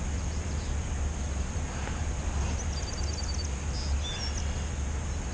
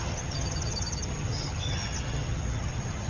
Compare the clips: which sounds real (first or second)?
first